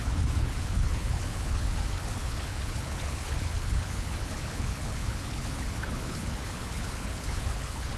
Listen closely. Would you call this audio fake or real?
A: fake